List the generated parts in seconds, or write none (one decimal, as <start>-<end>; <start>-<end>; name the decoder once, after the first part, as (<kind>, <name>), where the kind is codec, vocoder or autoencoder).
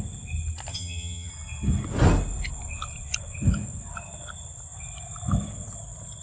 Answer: 0.7-1.3 (vocoder, HiFi-GAN)